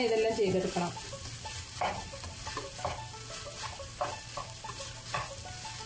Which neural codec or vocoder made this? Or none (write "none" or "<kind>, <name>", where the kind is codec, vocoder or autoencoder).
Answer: none